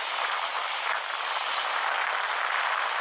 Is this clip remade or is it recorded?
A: recorded